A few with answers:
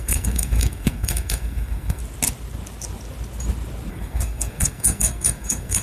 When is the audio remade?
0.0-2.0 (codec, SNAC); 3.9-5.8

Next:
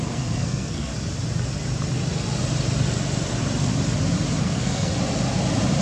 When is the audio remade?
0.0-0.9 (codec, SNAC); 4.4-4.9

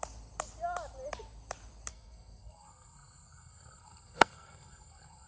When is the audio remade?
1.9-5.3 (codec, SNAC)

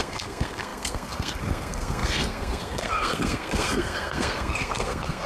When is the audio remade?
0.0-5.3 (codec, SNAC)

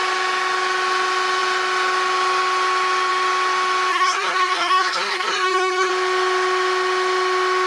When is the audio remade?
3.9-5.9 (codec, SNAC)

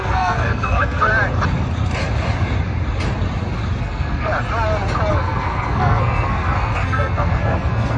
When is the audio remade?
0.0-1.1 (codec, SNAC); 3.8-4.3; 5.1-8.0

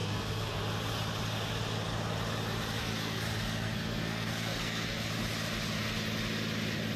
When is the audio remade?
0.0-0.6 (codec, SNAC); 2.8-5.1

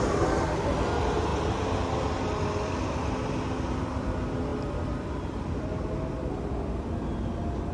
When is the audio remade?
none